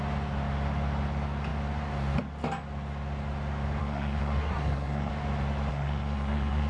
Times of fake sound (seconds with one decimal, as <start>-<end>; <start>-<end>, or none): 3.8-5.1; 5.7-6.7